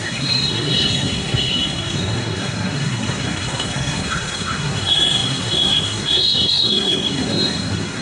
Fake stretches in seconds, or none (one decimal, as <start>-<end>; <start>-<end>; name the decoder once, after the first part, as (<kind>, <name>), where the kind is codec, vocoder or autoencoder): 0.0-8.0 (codec, SNAC)

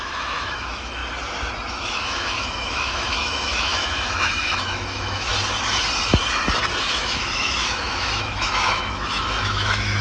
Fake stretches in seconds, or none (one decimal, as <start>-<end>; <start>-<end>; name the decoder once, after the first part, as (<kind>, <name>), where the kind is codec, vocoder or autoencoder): 0.0-1.0 (autoencoder, DAC-VAE); 1.7-5.3; 6.8-10.0

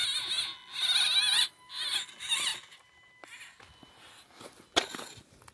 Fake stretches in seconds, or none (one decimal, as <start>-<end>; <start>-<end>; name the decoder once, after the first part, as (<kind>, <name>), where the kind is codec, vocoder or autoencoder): none

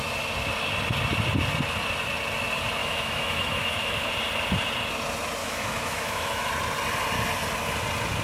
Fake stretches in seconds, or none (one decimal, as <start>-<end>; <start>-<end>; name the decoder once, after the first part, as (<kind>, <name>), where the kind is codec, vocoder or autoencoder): 2.8-4.1 (autoencoder, DAC-VAE); 5.4-6.5

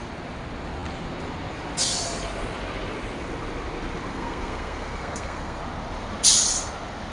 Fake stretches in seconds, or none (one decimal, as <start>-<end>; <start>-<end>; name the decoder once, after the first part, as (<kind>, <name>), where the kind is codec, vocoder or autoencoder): 4.1-5.6 (codec, SNAC)